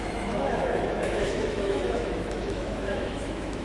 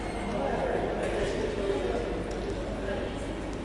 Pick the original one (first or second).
second